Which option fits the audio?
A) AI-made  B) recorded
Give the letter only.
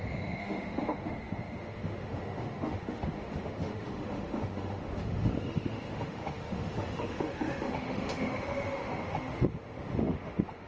A